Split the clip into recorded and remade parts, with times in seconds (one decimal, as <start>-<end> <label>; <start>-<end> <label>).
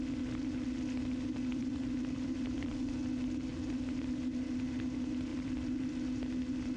0.0-1.5 recorded; 1.5-2.8 remade; 2.8-3.5 recorded; 3.5-4.1 remade; 4.1-5.3 recorded; 5.3-5.9 remade; 5.9-6.8 recorded